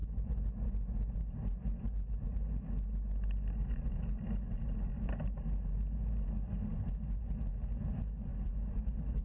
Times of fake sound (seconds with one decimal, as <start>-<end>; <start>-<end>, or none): 8.3-9.2